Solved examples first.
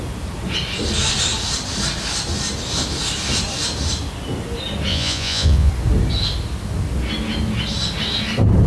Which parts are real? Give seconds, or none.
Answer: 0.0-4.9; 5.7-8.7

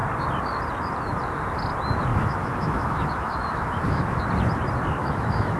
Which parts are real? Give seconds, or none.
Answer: 0.0-2.1; 4.2-5.0

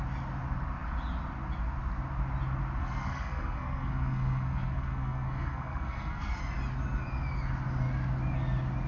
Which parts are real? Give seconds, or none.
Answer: 0.0-2.8; 6.4-8.9

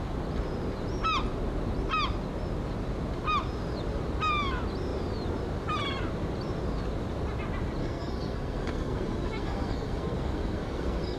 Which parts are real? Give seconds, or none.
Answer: 0.0-7.8

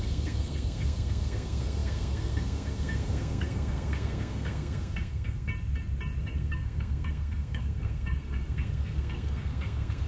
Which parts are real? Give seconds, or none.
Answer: 5.5-6.2

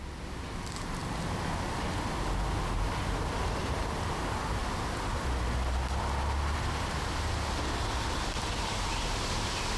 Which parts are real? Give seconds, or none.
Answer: 0.0-9.8